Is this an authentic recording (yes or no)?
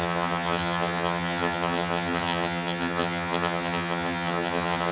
no